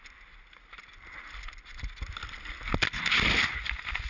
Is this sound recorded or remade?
recorded